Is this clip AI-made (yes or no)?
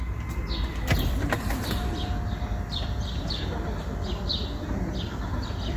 no